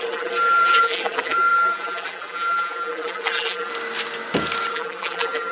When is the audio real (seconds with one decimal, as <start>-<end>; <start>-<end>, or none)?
3.7-4.7